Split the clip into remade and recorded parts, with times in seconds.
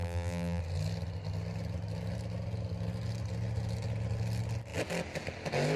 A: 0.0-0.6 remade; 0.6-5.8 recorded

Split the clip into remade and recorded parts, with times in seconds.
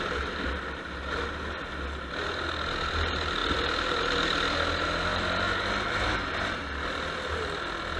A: 0.0-3.4 recorded; 3.4-4.0 remade; 4.0-8.0 recorded